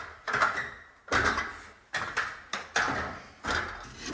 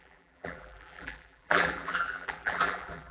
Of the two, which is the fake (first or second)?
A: second